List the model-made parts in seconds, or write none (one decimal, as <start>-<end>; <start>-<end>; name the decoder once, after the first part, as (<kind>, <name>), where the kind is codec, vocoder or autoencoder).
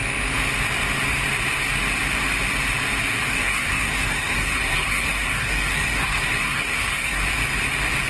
3.3-7.2 (codec, SNAC)